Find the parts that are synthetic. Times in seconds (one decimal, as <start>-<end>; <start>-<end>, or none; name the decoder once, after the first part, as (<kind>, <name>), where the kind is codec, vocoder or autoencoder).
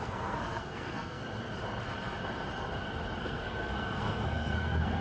0.0-1.2 (codec, SNAC); 3.2-5.0